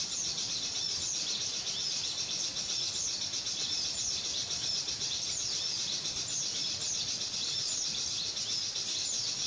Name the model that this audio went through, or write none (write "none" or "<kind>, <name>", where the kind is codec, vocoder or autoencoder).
vocoder, BigVGAN v2